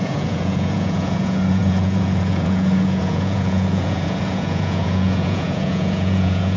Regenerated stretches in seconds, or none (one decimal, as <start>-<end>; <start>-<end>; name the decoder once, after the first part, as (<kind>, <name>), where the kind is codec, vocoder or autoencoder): 0.0-6.6 (vocoder, Vocos)